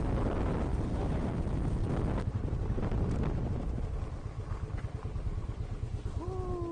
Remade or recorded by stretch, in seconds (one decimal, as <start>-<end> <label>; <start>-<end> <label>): 0.0-6.7 recorded